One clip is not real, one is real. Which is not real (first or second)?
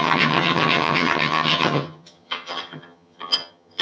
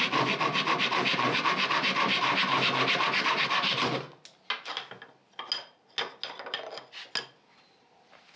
first